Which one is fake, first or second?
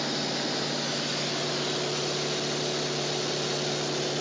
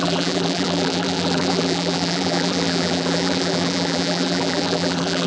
second